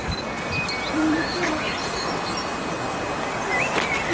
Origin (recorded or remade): recorded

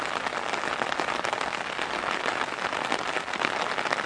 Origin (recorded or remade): recorded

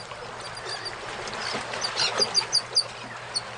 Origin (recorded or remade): recorded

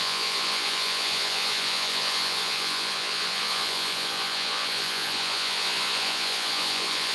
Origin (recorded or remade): remade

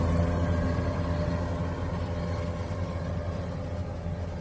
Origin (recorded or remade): recorded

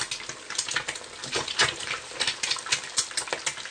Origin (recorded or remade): recorded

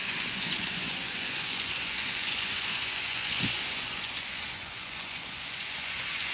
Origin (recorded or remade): remade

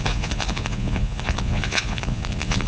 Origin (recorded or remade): remade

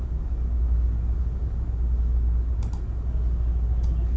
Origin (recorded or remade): recorded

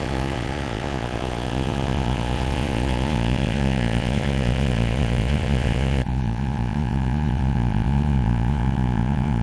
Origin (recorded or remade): remade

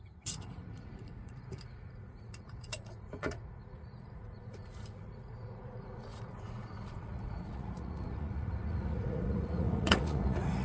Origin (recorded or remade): remade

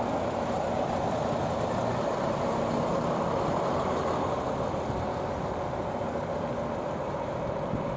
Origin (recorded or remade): recorded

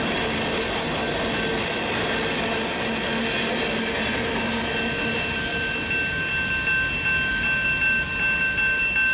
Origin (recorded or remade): recorded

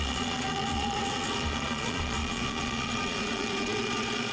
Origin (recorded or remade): remade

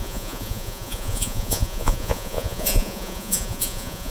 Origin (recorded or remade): remade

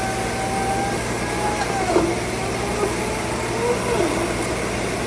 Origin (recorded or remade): recorded